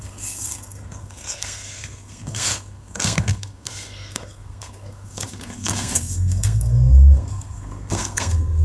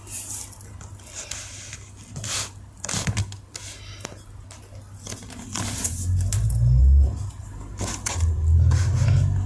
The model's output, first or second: first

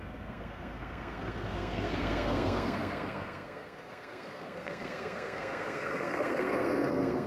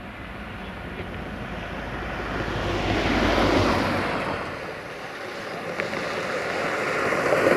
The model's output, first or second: first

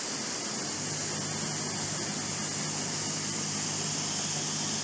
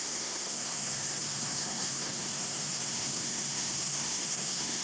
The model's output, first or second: second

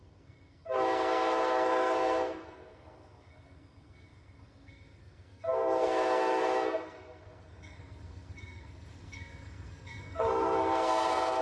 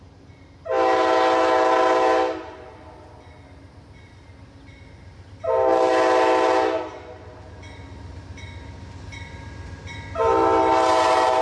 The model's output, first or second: first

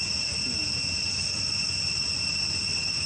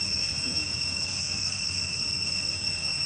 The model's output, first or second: second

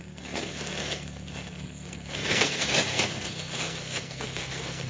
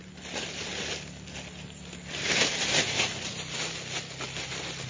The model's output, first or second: first